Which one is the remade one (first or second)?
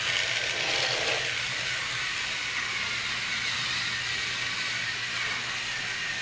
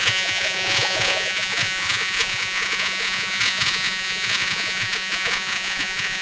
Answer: second